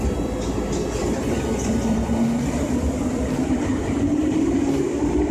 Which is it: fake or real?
fake